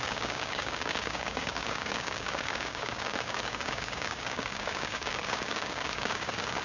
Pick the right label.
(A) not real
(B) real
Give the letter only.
A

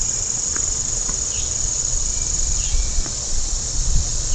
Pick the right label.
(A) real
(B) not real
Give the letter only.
B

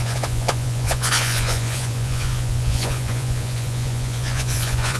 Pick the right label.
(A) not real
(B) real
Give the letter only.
A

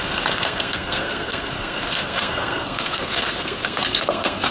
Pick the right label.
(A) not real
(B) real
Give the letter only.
A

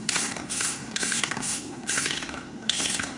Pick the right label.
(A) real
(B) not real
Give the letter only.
B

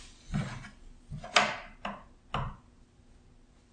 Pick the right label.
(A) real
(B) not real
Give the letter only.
A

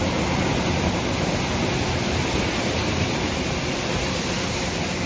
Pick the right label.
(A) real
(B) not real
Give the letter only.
A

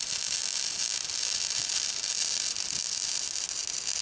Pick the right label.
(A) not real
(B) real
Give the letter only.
B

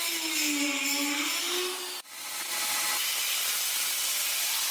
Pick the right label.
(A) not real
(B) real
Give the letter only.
B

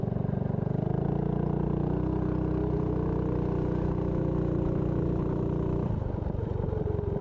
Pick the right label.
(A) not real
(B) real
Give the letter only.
B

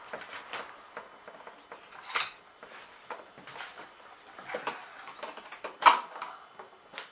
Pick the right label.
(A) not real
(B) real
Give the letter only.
B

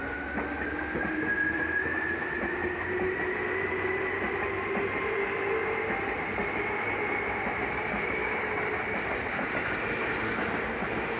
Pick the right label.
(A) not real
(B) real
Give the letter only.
B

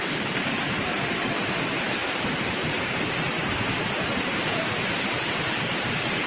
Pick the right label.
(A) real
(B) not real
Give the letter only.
B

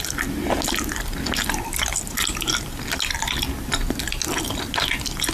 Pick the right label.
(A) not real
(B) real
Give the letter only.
B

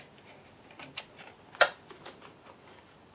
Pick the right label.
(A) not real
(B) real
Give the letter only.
B